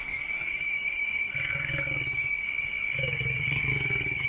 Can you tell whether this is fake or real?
fake